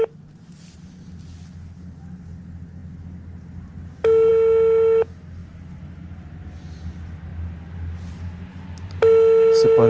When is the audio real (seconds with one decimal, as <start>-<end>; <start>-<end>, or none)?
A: 0.0-9.9